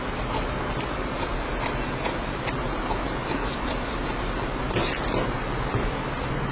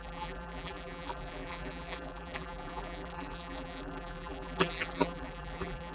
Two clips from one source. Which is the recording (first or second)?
first